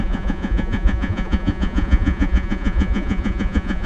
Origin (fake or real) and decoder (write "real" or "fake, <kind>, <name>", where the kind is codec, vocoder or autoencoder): fake, vocoder, Vocos